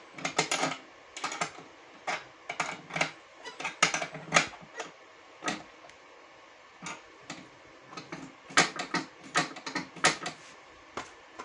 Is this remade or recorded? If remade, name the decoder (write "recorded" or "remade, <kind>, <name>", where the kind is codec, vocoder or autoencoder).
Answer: recorded